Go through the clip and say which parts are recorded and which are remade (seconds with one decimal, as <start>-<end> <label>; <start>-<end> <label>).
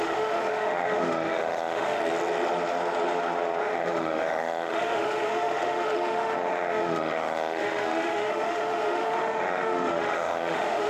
0.0-2.0 remade; 2.0-3.6 recorded; 3.6-10.9 remade